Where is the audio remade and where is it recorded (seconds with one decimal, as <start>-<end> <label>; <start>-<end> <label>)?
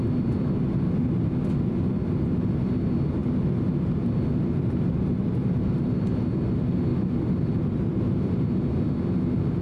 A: 0.0-6.9 recorded; 6.9-8.0 remade; 8.0-9.6 recorded